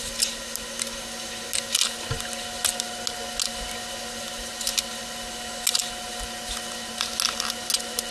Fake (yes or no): no